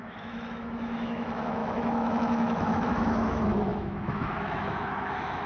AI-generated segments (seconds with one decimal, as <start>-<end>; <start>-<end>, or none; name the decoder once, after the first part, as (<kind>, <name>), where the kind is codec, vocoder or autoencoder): 0.0-5.5 (autoencoder, DAC-VAE)